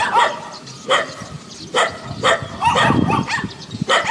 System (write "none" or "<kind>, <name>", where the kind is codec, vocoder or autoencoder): none